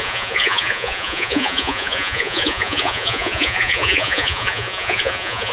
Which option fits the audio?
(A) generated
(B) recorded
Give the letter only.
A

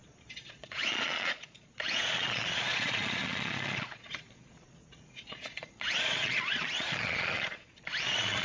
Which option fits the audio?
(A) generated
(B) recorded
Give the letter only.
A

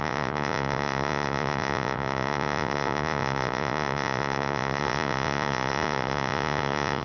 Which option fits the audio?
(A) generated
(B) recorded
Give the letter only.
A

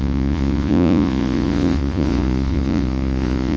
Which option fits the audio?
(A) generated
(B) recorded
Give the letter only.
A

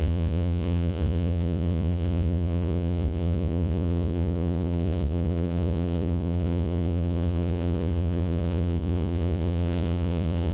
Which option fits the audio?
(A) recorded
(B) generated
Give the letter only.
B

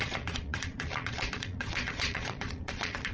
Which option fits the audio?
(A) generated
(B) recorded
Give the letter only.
A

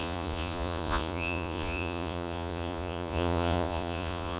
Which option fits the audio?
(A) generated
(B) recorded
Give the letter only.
A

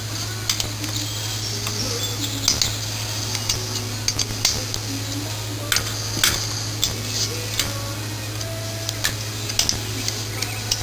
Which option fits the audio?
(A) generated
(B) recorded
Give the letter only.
B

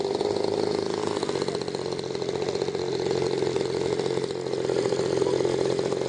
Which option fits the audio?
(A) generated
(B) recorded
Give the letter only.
B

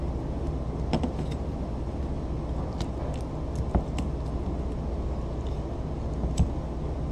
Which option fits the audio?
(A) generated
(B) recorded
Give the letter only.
B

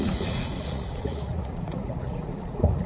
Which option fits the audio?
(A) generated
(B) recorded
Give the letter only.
A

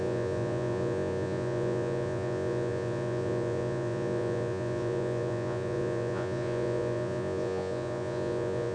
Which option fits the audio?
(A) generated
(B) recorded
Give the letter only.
A